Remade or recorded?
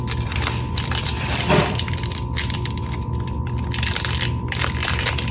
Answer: remade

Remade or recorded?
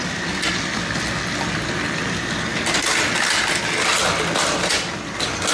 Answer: recorded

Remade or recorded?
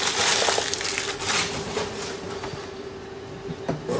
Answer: recorded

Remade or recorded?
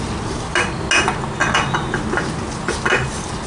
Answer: recorded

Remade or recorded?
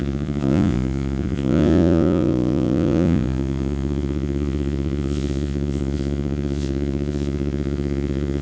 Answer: remade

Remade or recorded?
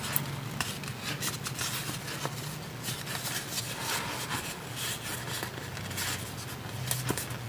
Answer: recorded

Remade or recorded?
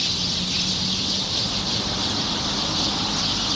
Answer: recorded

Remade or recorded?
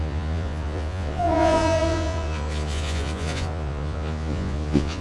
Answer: remade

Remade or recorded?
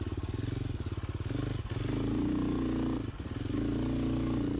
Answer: recorded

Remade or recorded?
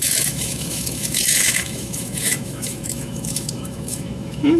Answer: remade